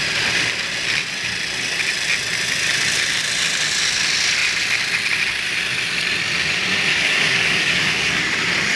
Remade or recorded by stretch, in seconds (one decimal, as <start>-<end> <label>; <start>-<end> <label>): 0.0-6.9 recorded; 6.9-8.2 remade; 8.2-8.8 recorded